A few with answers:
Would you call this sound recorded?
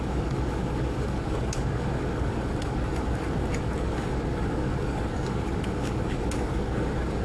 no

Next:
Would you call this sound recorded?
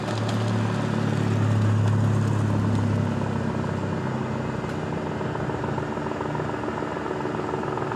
yes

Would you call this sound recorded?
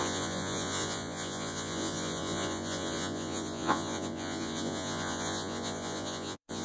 no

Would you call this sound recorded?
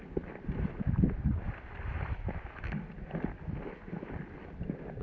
yes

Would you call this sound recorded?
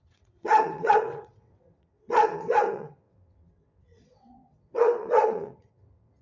no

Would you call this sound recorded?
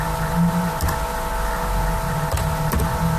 yes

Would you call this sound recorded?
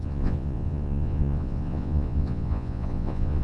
no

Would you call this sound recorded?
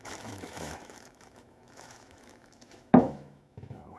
no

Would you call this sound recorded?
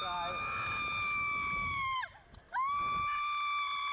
yes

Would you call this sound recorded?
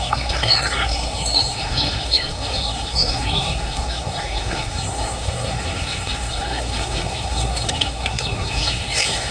no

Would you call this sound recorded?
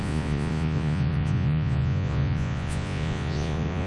no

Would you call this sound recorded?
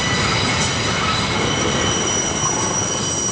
yes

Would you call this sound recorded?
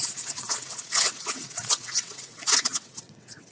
no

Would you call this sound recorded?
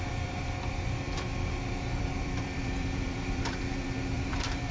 no